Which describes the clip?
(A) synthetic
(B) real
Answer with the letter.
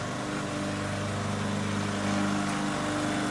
B